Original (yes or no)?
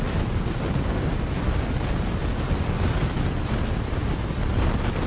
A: yes